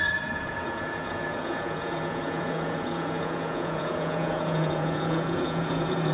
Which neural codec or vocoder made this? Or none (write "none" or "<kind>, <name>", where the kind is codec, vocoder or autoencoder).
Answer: vocoder, Vocos